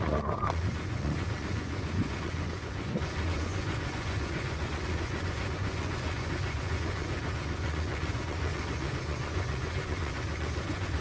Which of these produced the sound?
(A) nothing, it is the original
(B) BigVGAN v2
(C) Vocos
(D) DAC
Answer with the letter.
C